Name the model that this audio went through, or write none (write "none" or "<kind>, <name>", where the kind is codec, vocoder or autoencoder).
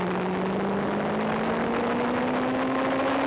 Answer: none